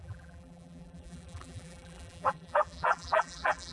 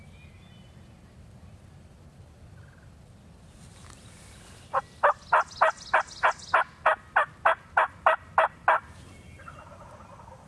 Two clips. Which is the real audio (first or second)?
second